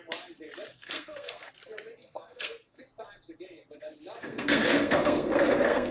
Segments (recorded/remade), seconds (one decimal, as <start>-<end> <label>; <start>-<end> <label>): 0.0-0.7 recorded; 0.7-1.5 remade; 1.5-2.0 recorded; 2.0-2.8 remade; 2.8-4.2 recorded; 4.2-5.9 remade